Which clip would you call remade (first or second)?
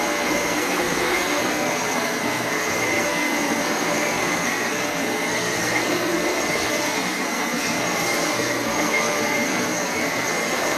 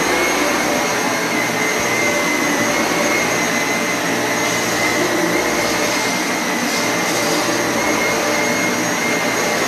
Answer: first